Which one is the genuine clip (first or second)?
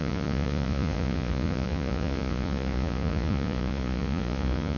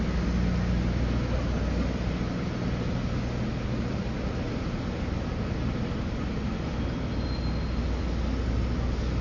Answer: second